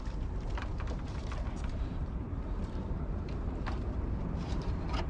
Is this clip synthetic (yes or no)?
yes